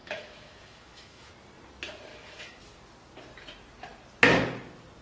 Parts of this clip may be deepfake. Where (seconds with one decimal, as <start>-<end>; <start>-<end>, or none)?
0.0-1.3; 2.1-2.6